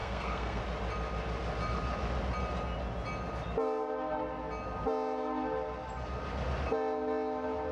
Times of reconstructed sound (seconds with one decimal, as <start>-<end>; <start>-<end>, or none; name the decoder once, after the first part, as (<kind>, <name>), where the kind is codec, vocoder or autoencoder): 0.0-0.6 (codec, SNAC)